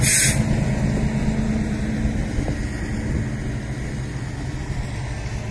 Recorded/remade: recorded